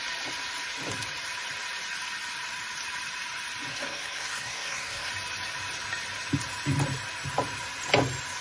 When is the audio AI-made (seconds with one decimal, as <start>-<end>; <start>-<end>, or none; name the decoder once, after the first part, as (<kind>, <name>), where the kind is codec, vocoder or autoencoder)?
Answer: 3.7-5.1 (codec, SNAC)